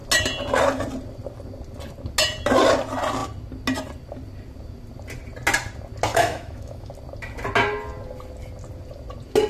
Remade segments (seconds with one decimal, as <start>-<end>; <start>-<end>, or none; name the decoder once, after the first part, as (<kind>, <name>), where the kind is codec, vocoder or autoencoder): 6.1-6.9 (autoencoder, DAC-VAE)